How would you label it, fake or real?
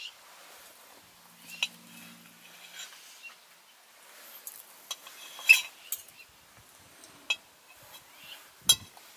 real